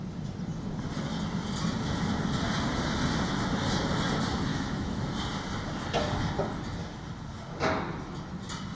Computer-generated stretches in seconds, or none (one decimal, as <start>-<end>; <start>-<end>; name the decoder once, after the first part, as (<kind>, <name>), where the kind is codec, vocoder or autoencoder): 4.5-5.0 (autoencoder, DAC-VAE)